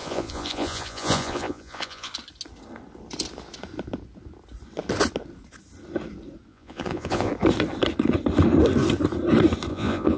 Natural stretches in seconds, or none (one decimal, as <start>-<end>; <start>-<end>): 2.1-6.5; 7.3-9.7